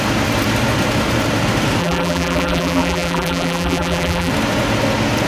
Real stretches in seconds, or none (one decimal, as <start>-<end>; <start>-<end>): 0.0-1.8; 4.3-5.3